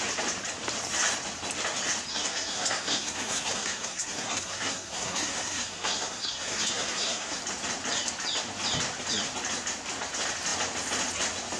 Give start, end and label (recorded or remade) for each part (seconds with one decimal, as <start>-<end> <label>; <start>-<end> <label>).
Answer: 0.0-2.1 recorded; 2.1-7.4 remade; 7.4-11.6 recorded